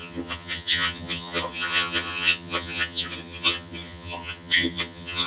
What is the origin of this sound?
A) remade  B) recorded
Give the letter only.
A